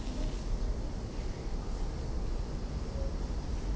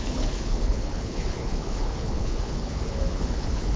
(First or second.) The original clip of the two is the first